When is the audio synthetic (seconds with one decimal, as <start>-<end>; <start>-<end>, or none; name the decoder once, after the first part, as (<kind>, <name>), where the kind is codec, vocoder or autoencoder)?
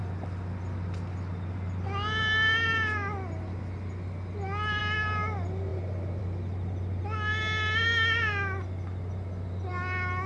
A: none